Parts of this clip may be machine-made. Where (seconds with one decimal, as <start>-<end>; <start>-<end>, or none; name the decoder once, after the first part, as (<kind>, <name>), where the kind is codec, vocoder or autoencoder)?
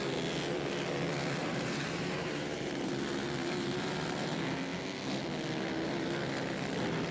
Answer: 1.4-2.9 (vocoder, BigVGAN v2)